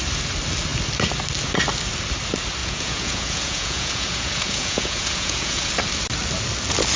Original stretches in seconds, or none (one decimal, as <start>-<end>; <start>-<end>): 0.0-2.6; 5.7-7.0

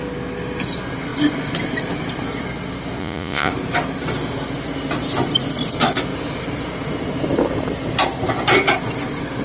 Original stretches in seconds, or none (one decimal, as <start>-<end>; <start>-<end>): 0.0-3.0; 3.5-9.4